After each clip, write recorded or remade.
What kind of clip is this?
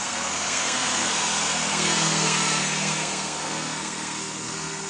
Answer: remade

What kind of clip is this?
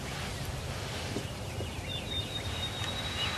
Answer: recorded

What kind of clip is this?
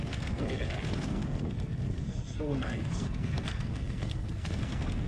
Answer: remade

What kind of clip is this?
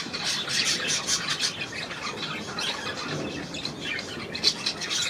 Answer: recorded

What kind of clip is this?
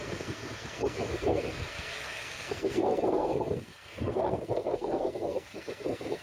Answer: remade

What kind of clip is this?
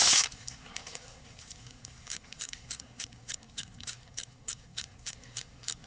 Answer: remade